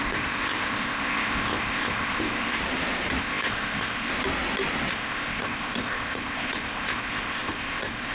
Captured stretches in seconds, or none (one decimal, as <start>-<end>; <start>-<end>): 2.6-3.2; 4.1-4.9